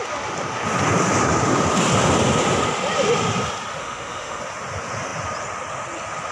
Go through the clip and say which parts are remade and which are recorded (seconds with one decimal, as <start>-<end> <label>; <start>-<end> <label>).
0.0-3.8 recorded; 3.8-4.4 remade; 4.4-6.3 recorded